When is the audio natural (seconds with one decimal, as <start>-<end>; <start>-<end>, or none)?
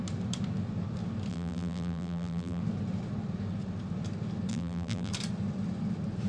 0.0-1.3; 2.6-4.5; 5.1-6.3